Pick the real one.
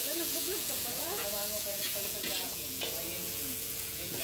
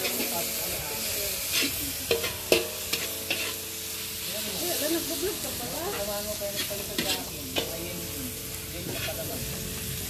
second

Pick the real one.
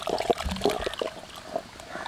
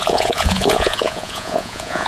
first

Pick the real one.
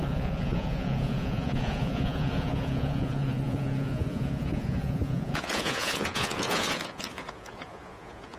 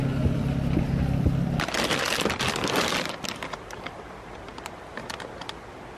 second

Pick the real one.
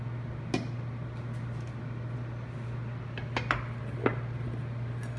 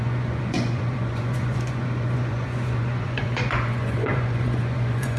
first